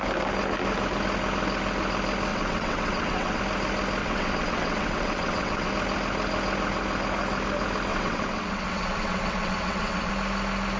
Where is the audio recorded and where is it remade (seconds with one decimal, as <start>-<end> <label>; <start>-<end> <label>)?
0.0-2.3 recorded; 2.3-3.4 remade; 3.4-4.0 recorded; 4.0-5.7 remade; 5.7-7.9 recorded; 7.9-10.1 remade; 10.1-10.8 recorded